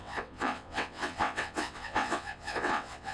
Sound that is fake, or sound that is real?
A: fake